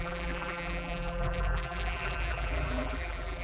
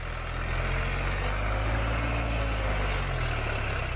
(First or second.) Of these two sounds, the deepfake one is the first